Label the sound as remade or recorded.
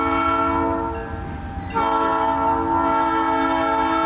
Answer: recorded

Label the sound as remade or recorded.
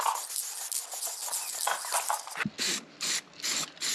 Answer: recorded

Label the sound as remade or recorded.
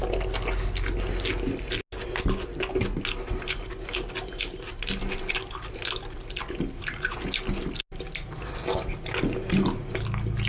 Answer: recorded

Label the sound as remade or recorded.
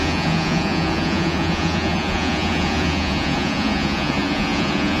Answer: remade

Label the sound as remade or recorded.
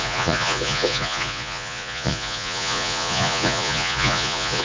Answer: remade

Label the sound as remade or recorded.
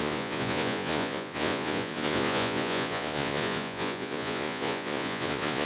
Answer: remade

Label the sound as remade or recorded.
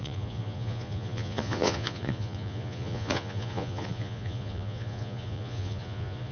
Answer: remade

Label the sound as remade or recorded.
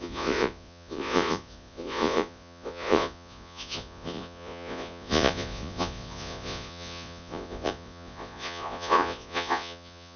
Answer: remade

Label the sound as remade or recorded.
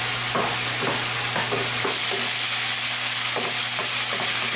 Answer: recorded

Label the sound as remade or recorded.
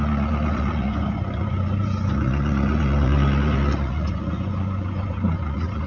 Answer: remade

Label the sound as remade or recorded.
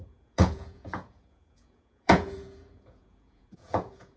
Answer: remade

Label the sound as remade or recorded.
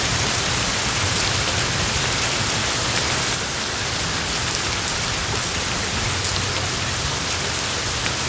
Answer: recorded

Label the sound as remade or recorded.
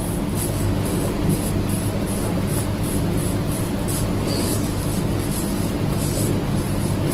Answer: recorded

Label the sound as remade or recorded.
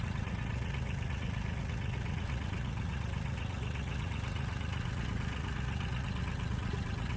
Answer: remade